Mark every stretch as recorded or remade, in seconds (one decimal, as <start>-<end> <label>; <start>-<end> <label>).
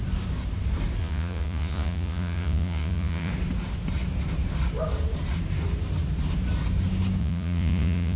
0.0-1.0 recorded; 1.0-3.3 remade; 3.3-7.2 recorded; 7.2-8.2 remade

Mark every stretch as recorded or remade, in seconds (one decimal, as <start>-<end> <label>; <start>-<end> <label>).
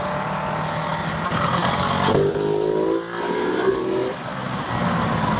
0.0-5.4 recorded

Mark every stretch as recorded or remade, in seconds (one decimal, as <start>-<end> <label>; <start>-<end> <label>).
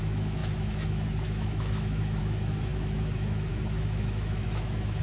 0.0-5.0 remade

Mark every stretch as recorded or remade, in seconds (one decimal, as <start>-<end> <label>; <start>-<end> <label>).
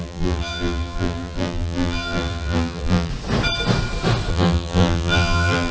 0.0-3.1 remade; 3.1-4.3 recorded; 4.3-5.7 remade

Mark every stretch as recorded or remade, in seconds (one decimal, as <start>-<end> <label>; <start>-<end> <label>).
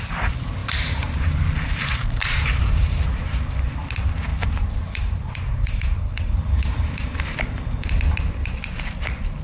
0.0-0.6 recorded; 0.6-3.7 remade; 3.7-4.3 recorded; 4.3-8.0 remade; 8.0-9.4 recorded